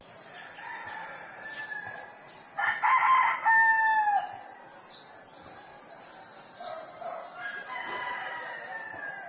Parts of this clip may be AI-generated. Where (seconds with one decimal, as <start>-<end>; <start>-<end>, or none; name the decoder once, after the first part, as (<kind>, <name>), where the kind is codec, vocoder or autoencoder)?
none